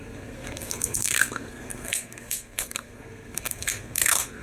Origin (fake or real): fake